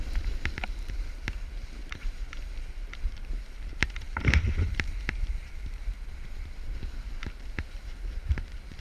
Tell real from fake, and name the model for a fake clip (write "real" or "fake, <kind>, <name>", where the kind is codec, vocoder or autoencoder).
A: fake, vocoder, BigVGAN v2